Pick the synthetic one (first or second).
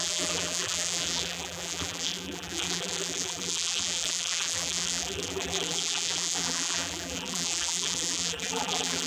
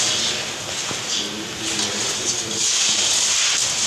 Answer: first